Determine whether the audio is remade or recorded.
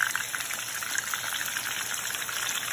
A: recorded